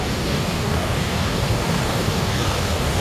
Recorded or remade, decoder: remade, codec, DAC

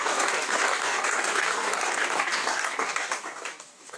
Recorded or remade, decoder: remade, codec, DAC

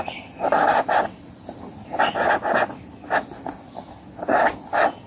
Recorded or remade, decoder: recorded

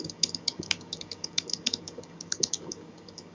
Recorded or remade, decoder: remade, codec, DAC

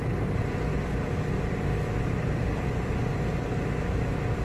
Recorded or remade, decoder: recorded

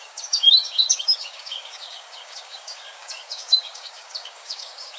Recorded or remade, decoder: remade, codec, DAC